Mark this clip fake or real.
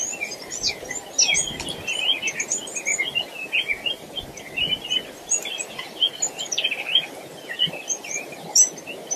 real